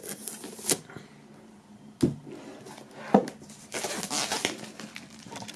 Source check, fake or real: real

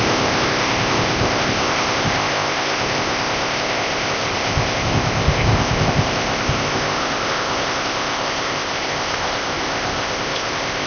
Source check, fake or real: fake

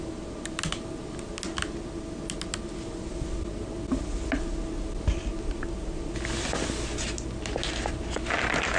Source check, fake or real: real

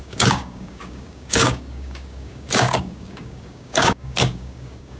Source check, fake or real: fake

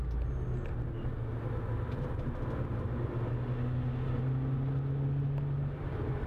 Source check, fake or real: real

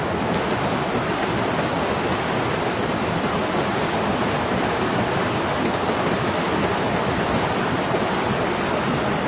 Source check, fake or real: real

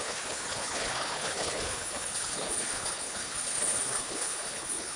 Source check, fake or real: fake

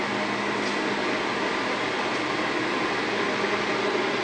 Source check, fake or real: real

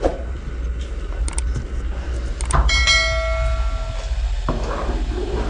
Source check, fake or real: real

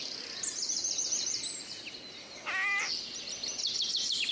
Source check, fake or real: real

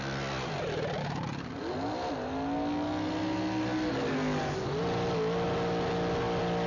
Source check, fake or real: real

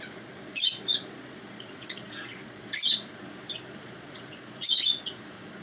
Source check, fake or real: fake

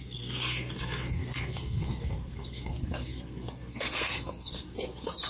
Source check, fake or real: fake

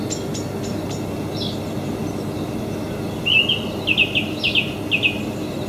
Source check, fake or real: real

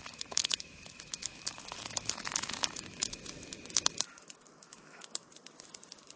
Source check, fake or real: fake